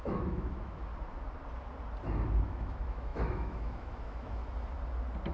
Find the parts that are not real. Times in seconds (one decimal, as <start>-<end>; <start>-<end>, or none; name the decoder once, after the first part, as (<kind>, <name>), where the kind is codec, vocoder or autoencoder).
0.0-0.9 (autoencoder, DAC-VAE); 2.4-4.4